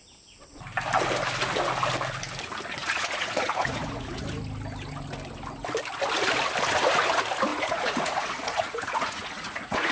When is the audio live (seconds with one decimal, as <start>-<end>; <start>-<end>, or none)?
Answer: 0.0-2.8; 4.2-7.5